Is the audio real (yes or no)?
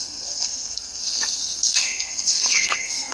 no